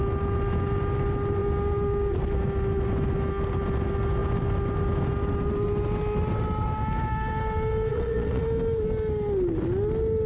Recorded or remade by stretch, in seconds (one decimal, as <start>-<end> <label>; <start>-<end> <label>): 0.0-7.9 recorded; 7.9-8.4 remade; 8.4-10.3 recorded